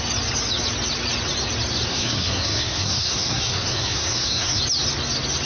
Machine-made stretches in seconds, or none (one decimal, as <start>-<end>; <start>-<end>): 1.9-4.6